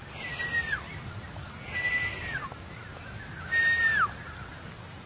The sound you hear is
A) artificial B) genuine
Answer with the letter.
B